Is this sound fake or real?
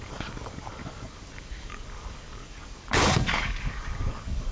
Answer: fake